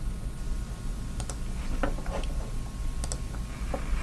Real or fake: real